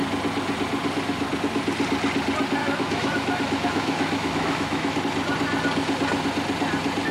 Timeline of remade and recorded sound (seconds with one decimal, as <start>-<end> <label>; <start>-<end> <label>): 0.0-2.6 recorded; 2.6-5.0 remade; 5.0-7.1 recorded